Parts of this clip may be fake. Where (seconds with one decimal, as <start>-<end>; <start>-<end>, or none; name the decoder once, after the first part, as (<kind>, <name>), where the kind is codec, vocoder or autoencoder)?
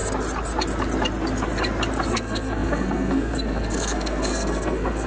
2.1-5.1 (codec, SNAC)